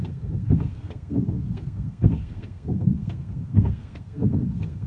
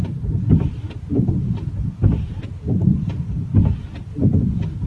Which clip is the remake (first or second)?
first